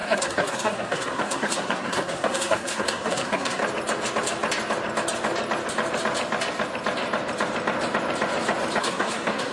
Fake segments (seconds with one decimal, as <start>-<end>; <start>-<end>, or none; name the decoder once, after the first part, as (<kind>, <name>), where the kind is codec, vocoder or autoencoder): 0.0-3.6 (codec, SNAC); 8.8-9.5